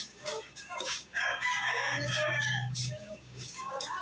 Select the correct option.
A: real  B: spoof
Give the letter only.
B